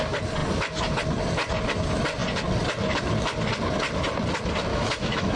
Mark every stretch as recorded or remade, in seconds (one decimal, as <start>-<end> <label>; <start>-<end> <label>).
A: 0.0-4.7 recorded; 4.7-5.4 remade